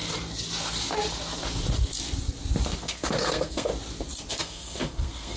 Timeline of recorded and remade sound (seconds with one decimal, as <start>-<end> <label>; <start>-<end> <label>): 0.0-2.8 recorded; 2.8-3.7 remade; 3.7-4.3 recorded; 4.3-5.4 remade